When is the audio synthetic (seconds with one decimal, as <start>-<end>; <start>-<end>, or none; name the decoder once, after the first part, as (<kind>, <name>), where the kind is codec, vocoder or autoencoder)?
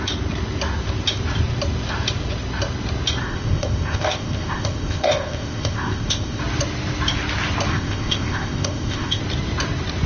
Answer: 3.2-6.4 (codec, ZipCodec); 7.7-9.2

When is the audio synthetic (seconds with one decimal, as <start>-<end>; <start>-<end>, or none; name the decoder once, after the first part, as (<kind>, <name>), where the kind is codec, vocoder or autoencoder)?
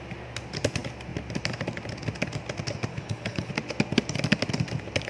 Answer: 2.9-3.5 (codec, HILCodec)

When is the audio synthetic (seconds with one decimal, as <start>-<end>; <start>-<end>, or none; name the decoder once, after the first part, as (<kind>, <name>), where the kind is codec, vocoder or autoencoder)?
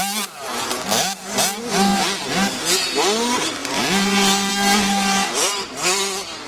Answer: none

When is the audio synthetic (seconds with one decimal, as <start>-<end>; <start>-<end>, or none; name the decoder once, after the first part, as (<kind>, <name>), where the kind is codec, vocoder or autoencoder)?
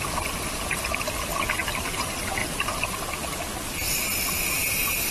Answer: none